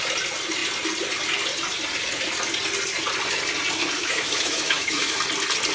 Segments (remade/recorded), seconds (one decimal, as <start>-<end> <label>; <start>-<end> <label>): 0.0-4.0 recorded; 4.0-5.2 remade; 5.2-5.7 recorded